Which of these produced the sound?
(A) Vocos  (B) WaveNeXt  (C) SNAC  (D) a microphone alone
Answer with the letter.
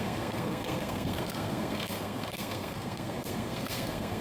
C